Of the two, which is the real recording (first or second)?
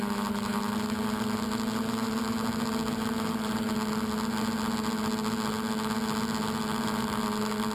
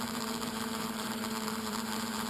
first